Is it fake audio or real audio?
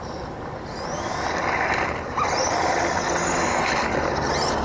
real